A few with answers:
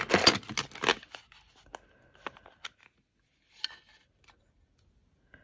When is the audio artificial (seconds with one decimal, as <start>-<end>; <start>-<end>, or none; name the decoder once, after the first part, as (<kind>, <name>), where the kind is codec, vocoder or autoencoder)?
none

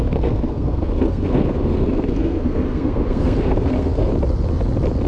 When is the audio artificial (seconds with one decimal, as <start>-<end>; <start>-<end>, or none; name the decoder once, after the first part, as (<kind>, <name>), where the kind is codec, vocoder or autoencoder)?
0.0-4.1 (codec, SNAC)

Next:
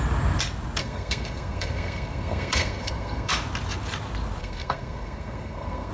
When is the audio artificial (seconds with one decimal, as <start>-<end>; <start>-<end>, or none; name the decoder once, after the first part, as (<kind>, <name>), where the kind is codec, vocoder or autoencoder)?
0.8-3.3 (codec, SNAC); 4.4-5.9